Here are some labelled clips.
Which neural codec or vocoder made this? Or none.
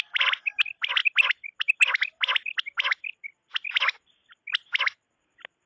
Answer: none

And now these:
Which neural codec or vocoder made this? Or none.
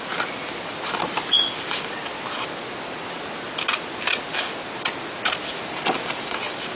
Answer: none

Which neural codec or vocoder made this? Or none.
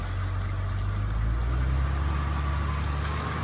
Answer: none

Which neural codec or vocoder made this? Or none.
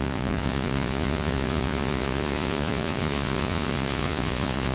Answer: vocoder, Vocos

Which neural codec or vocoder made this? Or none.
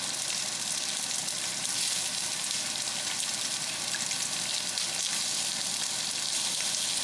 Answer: none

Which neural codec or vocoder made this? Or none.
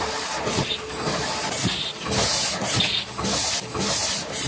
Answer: none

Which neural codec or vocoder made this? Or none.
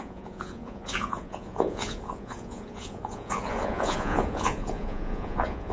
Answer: vocoder, Vocos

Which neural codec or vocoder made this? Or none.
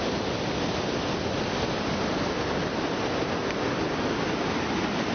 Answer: none